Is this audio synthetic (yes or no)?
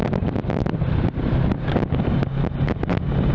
no